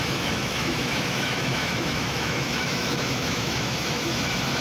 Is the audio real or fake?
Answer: fake